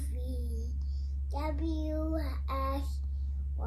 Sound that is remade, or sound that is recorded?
recorded